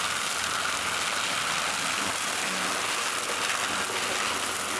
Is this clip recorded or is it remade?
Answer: recorded